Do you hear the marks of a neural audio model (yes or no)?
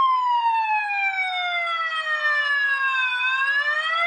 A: no